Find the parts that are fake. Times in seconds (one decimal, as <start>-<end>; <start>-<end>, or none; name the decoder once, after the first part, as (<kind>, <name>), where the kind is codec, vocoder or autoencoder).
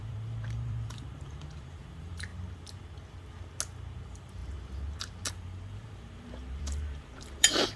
0.0-2.3 (vocoder, BigVGAN v2); 4.0-4.4; 5.3-7.8